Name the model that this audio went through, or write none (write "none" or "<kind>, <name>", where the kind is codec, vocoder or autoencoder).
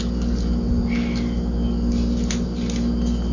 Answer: none